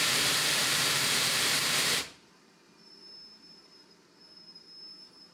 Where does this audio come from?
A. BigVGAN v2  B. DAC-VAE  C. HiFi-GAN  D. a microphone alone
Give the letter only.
A